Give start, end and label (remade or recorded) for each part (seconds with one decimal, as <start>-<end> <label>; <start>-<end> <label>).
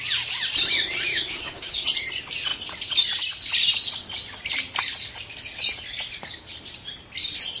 0.0-1.1 recorded; 1.1-1.7 remade; 1.7-7.6 recorded